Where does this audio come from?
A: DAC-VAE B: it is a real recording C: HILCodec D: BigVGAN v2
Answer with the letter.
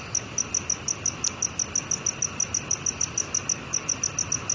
B